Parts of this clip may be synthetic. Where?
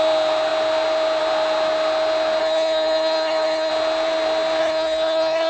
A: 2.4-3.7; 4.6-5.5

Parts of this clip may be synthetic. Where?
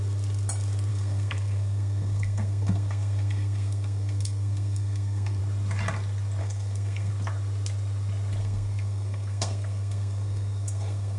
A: 0.9-5.4; 6.4-7.1; 8.4-11.2